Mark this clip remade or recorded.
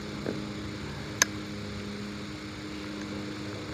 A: recorded